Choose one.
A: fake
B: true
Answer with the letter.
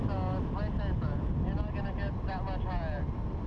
B